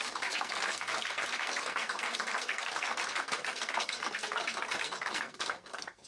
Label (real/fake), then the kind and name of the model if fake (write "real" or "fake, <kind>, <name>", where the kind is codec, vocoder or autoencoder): fake, codec, SNAC